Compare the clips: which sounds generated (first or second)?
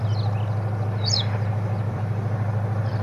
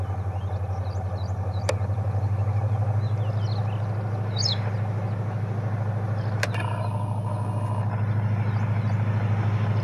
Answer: first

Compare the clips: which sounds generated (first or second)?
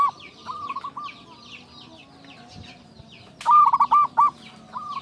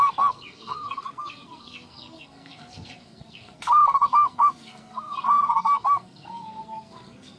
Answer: second